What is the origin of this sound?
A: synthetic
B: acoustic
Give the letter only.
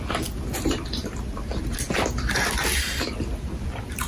B